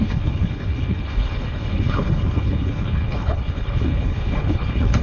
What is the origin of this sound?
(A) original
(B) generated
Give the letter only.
B